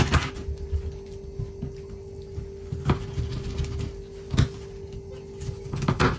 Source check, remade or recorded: recorded